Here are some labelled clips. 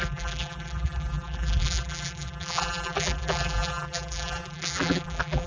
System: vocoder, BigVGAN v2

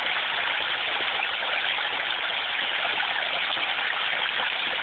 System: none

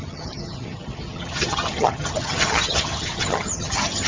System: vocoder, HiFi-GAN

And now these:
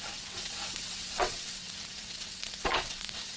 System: vocoder, WaveNeXt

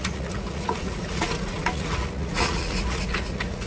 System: vocoder, Vocos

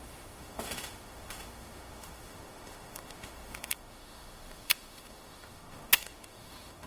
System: autoencoder, DAC-VAE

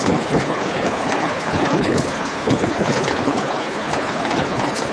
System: codec, HILCodec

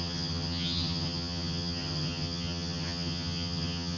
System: vocoder, HiFi-GAN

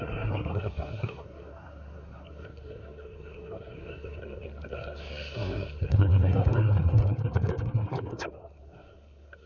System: codec, SNAC